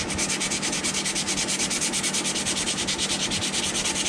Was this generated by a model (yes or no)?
no